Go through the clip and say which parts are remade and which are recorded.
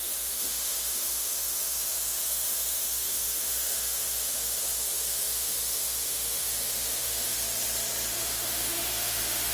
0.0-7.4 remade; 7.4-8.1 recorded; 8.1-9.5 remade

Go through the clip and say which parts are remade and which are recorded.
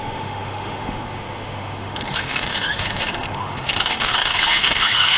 0.0-5.2 remade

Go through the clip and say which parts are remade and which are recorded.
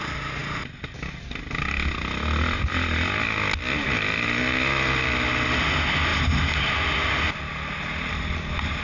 0.0-8.8 recorded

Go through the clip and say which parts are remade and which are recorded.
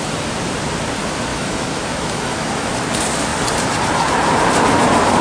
0.0-1.3 recorded; 1.3-2.7 remade; 2.7-5.2 recorded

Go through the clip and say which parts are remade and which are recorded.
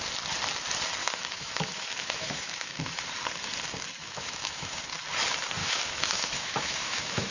0.0-1.0 recorded; 1.0-3.0 remade; 3.0-4.0 recorded; 4.0-4.8 remade; 4.8-5.6 recorded; 5.6-7.3 remade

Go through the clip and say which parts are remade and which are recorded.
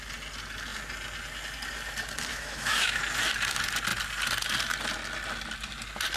0.0-2.3 recorded; 2.3-3.0 remade; 3.0-6.2 recorded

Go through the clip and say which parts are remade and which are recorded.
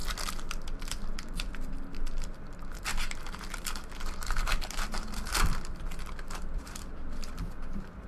0.0-8.1 recorded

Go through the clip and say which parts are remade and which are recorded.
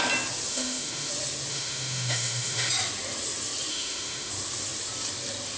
0.0-0.5 recorded; 0.5-1.1 remade; 1.1-1.5 recorded; 1.5-2.7 remade; 2.7-3.7 recorded; 3.7-4.3 remade; 4.3-5.6 recorded